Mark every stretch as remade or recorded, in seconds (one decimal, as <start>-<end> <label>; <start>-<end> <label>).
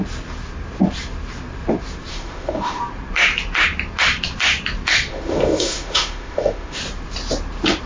0.0-2.1 recorded; 2.1-2.8 remade; 2.8-5.1 recorded; 5.1-6.8 remade; 6.8-7.9 recorded